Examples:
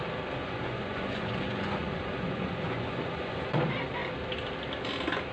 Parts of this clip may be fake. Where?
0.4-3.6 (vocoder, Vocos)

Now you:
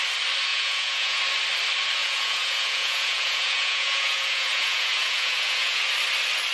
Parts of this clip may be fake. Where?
0.5-1.2 (vocoder, Vocos); 2.0-5.9

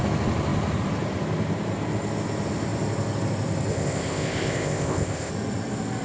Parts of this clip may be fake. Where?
3.7-5.3 (codec, ZipCodec)

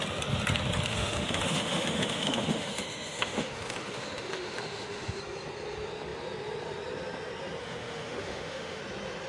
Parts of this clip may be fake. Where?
0.9-5.2 (autoencoder, DAC-VAE); 7.6-8.8

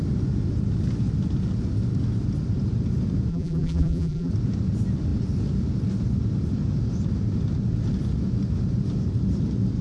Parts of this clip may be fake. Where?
3.3-4.3 (vocoder, BigVGAN v2)

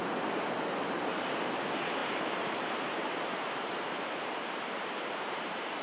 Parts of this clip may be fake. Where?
0.0-5.8 (vocoder, BigVGAN v2)

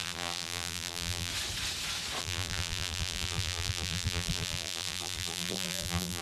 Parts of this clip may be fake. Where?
0.0-1.3 (vocoder, BigVGAN v2); 2.2-6.2